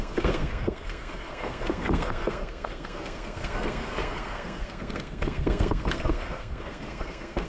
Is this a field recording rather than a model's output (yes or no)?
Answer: no